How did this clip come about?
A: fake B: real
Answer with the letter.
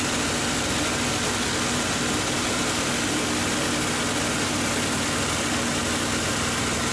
B